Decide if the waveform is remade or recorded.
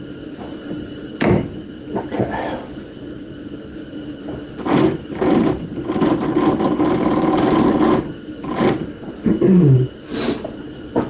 recorded